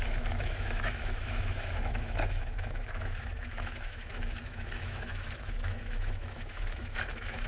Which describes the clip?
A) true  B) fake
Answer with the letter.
B